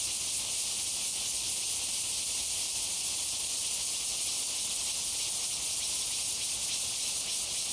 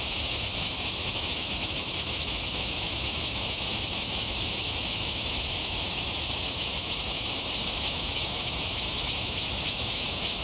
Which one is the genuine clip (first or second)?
first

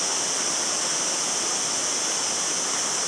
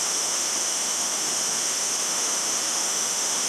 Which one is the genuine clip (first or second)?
first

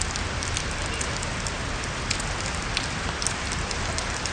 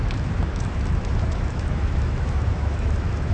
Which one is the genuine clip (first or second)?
first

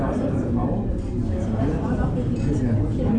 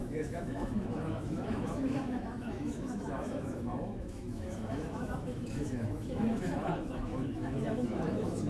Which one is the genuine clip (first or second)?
first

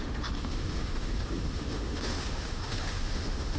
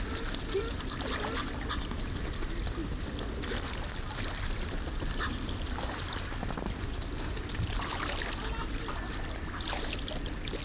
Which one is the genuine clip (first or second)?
second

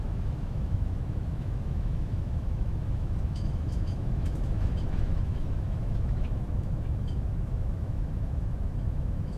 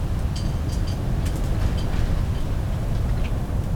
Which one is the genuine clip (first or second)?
second